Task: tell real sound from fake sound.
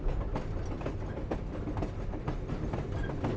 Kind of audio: real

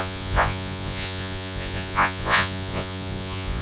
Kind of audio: fake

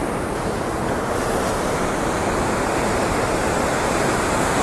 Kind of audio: real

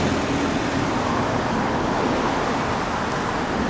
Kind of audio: real